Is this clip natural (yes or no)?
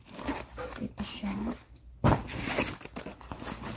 yes